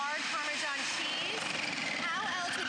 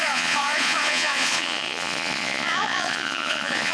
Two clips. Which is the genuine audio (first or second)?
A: first